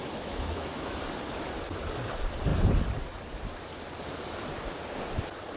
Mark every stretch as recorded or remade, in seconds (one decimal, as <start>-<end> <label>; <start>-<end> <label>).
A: 0.0-1.0 remade; 1.0-5.6 recorded